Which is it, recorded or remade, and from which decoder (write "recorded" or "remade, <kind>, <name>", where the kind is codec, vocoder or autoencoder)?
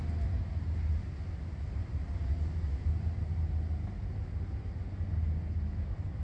recorded